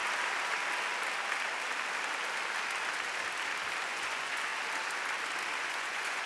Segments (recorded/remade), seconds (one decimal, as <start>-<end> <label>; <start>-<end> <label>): 0.0-3.8 recorded; 3.8-4.5 remade; 4.5-5.6 recorded; 5.6-6.3 remade